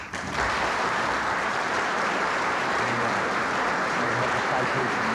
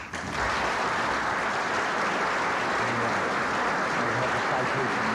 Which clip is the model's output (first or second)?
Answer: first